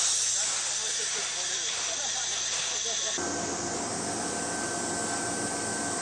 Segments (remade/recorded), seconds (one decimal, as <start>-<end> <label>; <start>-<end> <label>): 0.0-6.0 recorded